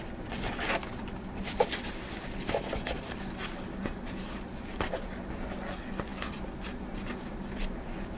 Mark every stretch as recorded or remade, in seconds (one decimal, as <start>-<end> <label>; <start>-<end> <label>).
0.0-8.2 recorded